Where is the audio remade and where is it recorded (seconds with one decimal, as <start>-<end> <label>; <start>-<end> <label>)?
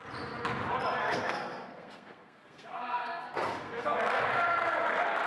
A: 0.0-1.0 recorded; 1.0-4.2 remade; 4.2-5.3 recorded